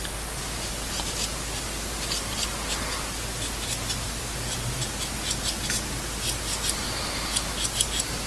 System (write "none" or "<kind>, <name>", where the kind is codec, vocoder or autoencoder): none